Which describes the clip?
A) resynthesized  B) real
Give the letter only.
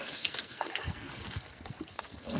A